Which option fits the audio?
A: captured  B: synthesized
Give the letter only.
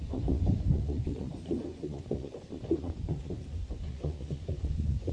B